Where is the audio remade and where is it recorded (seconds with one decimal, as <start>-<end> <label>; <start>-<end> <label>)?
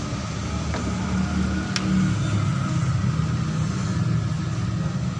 0.0-5.2 recorded